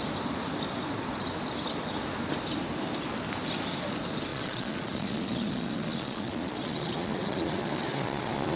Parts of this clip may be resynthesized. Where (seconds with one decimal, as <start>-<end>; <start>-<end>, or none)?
4.3-8.6